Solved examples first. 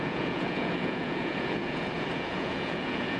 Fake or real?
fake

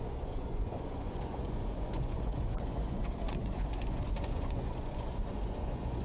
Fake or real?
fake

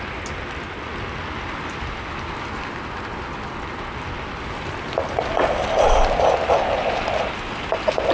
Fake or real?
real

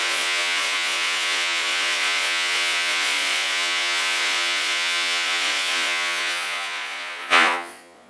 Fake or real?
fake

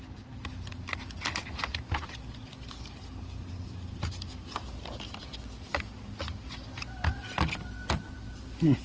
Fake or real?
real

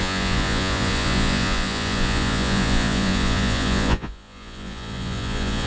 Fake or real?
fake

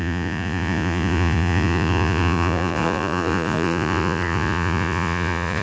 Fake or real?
fake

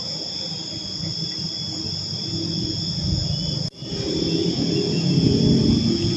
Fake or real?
real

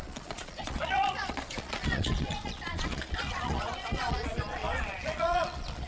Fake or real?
fake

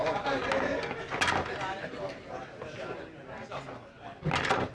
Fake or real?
real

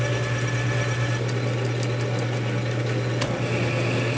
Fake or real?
real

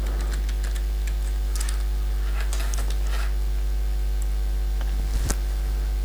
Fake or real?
real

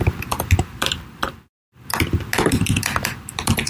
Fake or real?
real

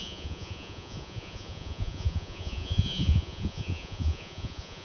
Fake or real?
fake